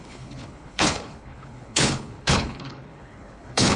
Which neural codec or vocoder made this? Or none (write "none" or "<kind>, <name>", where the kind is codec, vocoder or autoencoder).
codec, HILCodec